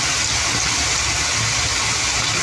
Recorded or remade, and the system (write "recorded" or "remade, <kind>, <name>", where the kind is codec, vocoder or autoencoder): recorded